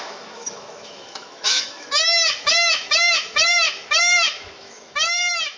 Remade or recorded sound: remade